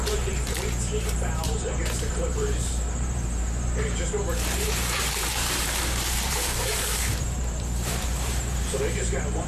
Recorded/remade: remade